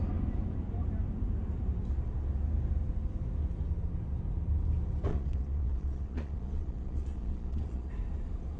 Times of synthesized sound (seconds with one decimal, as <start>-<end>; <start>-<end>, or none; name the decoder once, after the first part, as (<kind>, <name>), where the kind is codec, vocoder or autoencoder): 5.1-7.9 (vocoder, Vocos)